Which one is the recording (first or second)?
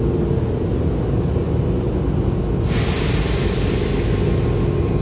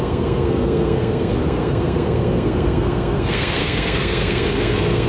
first